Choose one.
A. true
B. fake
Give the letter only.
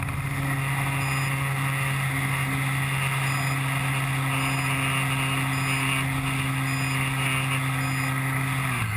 A